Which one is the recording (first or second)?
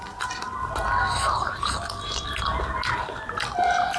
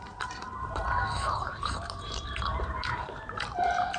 first